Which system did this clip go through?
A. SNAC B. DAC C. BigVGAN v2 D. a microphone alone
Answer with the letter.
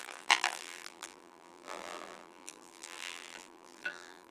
C